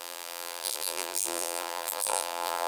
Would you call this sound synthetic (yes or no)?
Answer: yes